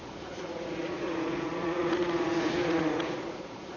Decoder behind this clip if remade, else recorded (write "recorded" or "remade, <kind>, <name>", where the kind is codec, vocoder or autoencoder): remade, vocoder, Vocos